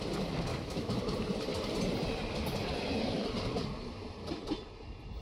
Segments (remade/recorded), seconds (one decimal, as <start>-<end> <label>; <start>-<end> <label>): 0.0-0.5 recorded; 0.5-1.0 remade; 1.0-5.2 recorded